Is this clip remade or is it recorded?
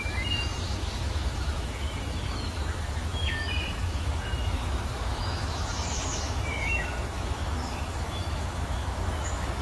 remade